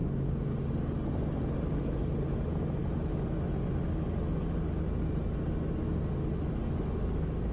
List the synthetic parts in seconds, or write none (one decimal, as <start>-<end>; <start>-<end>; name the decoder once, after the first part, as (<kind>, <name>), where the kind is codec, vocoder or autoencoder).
0.0-0.7 (codec, DAC)

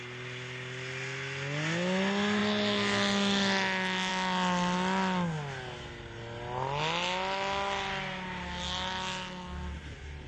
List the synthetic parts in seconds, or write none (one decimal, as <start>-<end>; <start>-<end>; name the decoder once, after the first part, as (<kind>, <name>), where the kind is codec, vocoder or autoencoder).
none

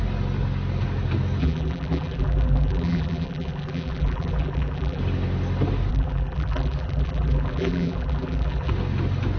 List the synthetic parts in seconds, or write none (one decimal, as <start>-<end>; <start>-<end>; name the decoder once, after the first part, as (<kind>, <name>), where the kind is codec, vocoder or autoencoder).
1.4-5.0 (vocoder, BigVGAN v2); 5.9-8.7